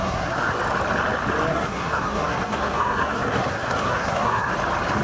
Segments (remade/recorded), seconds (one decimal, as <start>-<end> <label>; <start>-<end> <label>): 0.0-0.6 remade; 0.6-1.5 recorded; 1.5-4.5 remade; 4.5-5.0 recorded